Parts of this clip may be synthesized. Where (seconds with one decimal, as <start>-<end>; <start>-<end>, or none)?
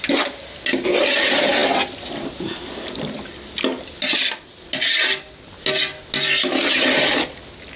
none